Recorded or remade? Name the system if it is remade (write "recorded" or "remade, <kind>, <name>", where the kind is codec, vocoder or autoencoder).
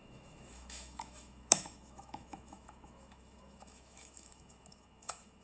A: remade, autoencoder, DAC-VAE